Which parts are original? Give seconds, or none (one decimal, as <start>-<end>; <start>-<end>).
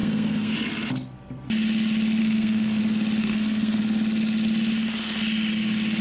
0.5-2.2; 2.8-3.2; 3.8-6.0